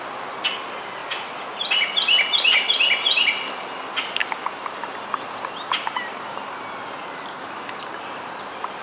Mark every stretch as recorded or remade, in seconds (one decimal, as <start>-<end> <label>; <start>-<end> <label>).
0.0-7.3 recorded; 7.3-7.8 remade; 7.8-8.8 recorded